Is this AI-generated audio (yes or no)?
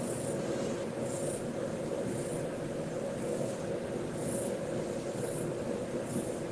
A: no